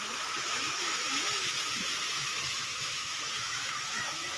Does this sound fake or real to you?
fake